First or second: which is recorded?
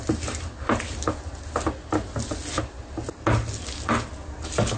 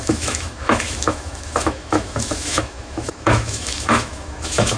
first